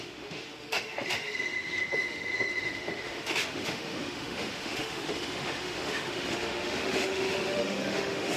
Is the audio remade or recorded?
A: remade